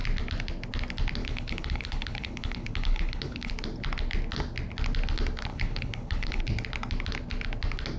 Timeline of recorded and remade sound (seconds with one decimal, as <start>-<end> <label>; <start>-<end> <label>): 0.0-1.2 recorded; 1.2-3.5 remade; 3.5-5.5 recorded; 5.5-6.4 remade; 6.4-8.0 recorded